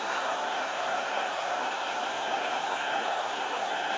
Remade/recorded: remade